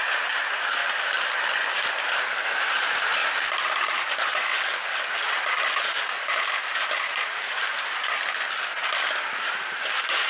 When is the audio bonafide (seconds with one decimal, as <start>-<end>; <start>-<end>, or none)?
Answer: 3.2-3.9; 4.5-5.8; 7.7-9.3